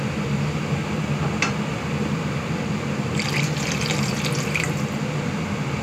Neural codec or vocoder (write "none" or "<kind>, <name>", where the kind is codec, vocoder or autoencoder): none